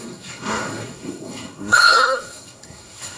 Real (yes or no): no